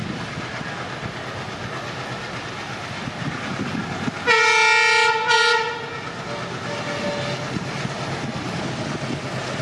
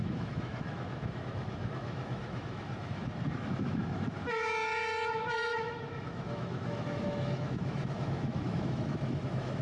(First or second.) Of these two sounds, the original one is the first